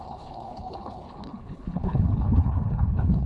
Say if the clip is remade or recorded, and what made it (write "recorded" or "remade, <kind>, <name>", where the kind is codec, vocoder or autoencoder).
remade, codec, HILCodec